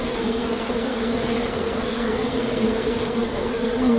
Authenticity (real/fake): fake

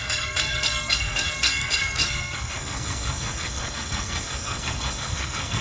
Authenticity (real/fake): fake